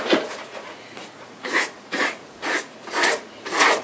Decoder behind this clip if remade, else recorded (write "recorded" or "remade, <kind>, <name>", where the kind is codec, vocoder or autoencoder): remade, vocoder, Vocos